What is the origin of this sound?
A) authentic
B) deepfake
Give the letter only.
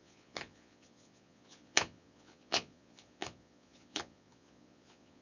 B